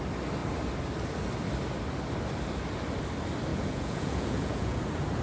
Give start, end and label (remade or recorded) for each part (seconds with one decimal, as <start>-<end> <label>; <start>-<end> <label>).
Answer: 0.0-3.5 recorded; 3.5-4.8 remade; 4.8-5.2 recorded